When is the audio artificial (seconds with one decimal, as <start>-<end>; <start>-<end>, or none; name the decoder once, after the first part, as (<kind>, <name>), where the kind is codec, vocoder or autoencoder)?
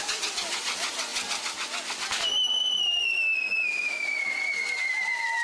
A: none